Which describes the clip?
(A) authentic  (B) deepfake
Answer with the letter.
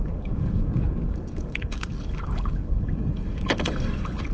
B